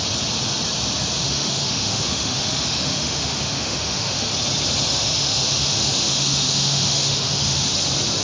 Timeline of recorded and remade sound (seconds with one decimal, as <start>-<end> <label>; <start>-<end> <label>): 0.0-1.2 recorded; 1.2-4.3 remade; 4.3-4.9 recorded; 4.9-7.7 remade; 7.7-8.2 recorded